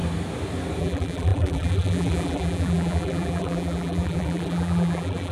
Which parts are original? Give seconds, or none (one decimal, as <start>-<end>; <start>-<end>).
0.0-0.8